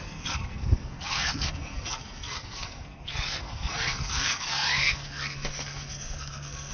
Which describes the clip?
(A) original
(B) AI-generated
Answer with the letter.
B